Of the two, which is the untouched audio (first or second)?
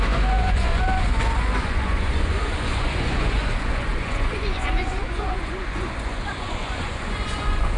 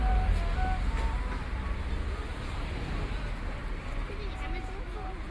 second